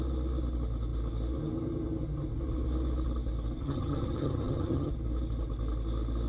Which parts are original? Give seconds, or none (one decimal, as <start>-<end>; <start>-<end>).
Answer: 0.0-3.6; 4.9-6.3